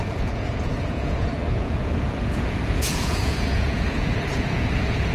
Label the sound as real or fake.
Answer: fake